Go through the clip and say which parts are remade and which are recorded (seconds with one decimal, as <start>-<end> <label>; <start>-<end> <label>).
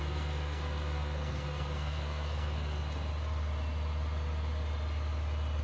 0.0-2.8 remade; 2.8-5.6 recorded